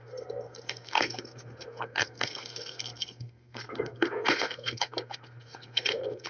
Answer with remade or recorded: remade